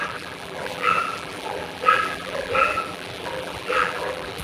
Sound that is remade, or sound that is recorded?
remade